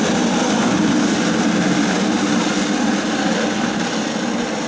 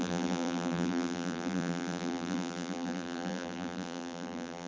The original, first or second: first